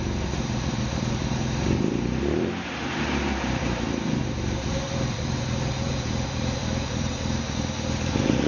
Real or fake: fake